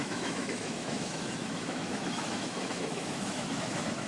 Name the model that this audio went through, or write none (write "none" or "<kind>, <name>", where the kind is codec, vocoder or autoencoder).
autoencoder, DAC-VAE